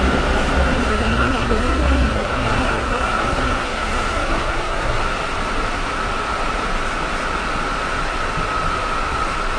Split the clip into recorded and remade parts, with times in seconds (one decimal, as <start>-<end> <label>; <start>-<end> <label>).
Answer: 0.0-0.9 recorded; 0.9-5.0 remade; 5.0-9.6 recorded